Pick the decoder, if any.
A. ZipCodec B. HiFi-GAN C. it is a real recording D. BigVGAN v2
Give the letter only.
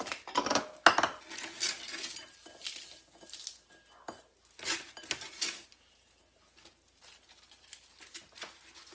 C